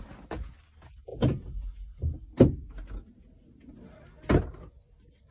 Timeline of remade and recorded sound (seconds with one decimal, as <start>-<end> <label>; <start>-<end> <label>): 0.0-5.3 recorded